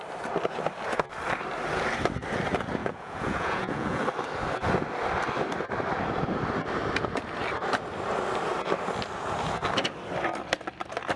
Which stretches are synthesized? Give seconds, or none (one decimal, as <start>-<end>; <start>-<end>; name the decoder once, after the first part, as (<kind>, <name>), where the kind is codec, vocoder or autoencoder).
2.8-4.0 (vocoder, Vocos)